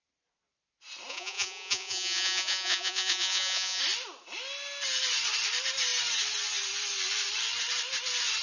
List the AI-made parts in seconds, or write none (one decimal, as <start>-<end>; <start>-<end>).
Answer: 1.1-3.8